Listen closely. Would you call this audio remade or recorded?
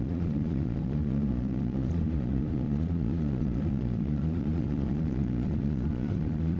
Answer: remade